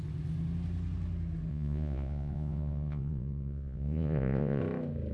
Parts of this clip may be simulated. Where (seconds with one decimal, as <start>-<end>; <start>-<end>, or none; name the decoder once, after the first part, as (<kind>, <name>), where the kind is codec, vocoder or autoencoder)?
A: 1.5-4.6 (vocoder, Vocos)